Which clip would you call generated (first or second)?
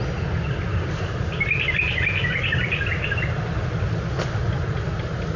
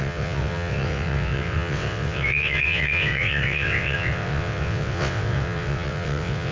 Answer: second